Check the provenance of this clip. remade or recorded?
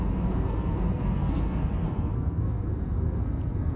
remade